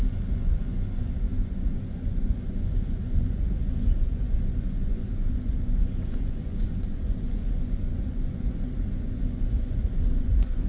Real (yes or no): no